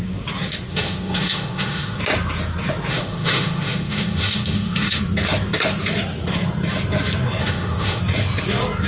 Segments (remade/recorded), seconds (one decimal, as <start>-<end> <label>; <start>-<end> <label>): 0.0-0.7 recorded; 0.7-2.0 remade; 2.0-2.9 recorded; 2.9-5.0 remade; 5.0-7.4 recorded; 7.4-8.0 remade; 8.0-8.9 recorded